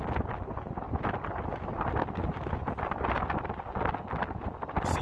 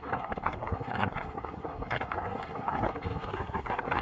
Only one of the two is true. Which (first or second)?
first